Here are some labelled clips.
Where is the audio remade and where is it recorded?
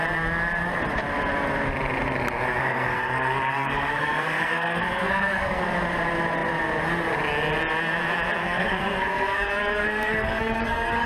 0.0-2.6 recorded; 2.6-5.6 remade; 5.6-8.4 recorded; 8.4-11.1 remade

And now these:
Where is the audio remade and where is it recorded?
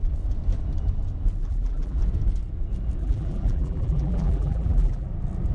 0.0-1.4 recorded; 1.4-2.0 remade; 2.0-3.0 recorded; 3.0-5.1 remade; 5.1-5.5 recorded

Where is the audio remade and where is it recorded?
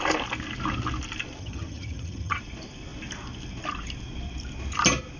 0.0-1.4 recorded; 1.4-2.4 remade; 2.4-5.2 recorded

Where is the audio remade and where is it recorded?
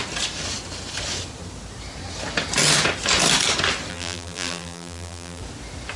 0.0-3.9 recorded; 3.9-5.4 remade; 5.4-6.0 recorded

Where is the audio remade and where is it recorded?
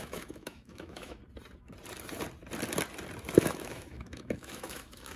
0.0-1.2 remade; 1.2-3.4 recorded; 3.4-5.2 remade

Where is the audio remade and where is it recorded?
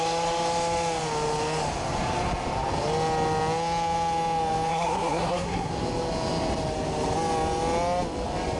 0.0-4.7 recorded; 4.7-5.7 remade; 5.7-8.6 recorded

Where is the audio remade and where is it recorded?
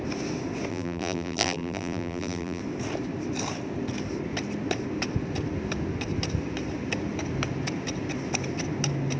0.0-0.7 recorded; 0.7-2.6 remade; 2.6-9.2 recorded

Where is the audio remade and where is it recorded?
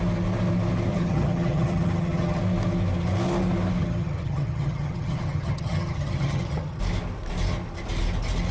0.0-0.9 recorded; 0.9-2.4 remade; 2.4-3.8 recorded; 3.8-6.8 remade; 6.8-8.5 recorded